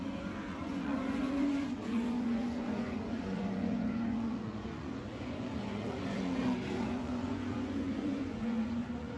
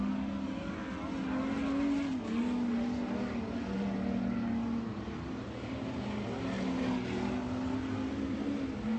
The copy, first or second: first